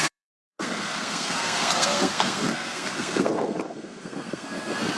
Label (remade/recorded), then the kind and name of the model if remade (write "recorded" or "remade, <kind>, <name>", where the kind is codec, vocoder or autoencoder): remade, codec, SNAC